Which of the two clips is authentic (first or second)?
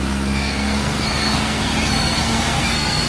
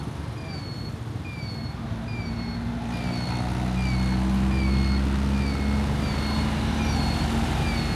second